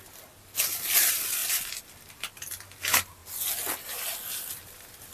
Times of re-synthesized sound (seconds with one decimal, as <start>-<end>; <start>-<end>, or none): none